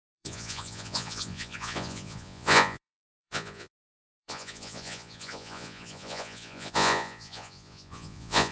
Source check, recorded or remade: remade